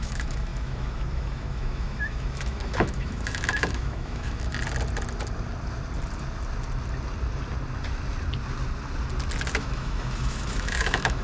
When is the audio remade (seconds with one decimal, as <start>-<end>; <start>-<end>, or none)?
0.0-4.5; 9.5-11.2